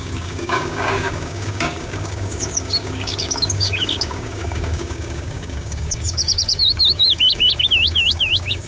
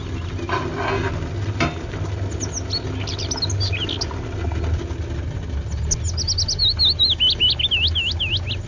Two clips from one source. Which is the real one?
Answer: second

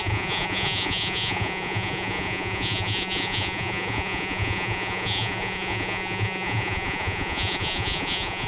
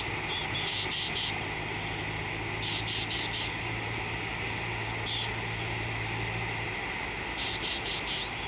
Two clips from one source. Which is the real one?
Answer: second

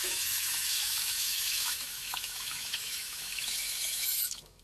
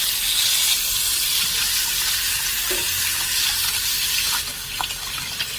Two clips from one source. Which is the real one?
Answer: second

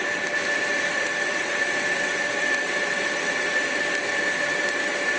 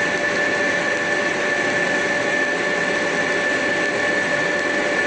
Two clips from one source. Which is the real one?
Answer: second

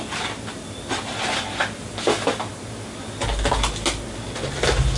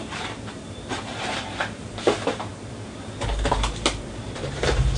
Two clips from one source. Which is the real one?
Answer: first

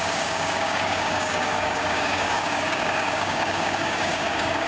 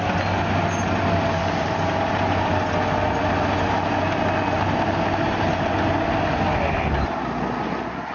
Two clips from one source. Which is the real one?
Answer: second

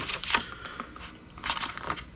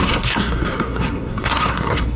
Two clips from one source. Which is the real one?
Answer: first